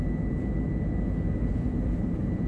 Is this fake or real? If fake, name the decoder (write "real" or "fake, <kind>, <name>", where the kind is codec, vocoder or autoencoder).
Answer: real